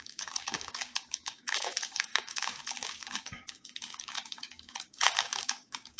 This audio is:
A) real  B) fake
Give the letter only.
B